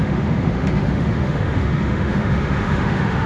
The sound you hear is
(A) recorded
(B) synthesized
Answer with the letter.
B